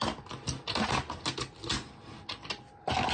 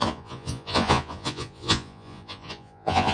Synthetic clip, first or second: second